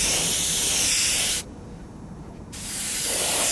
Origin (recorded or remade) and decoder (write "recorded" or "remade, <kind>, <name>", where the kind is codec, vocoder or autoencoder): remade, vocoder, BigVGAN v2